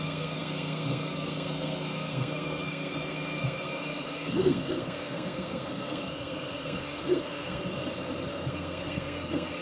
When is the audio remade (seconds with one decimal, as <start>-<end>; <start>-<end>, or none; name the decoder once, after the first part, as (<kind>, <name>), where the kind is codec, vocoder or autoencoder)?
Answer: 0.0-7.6 (codec, SNAC); 8.3-9.6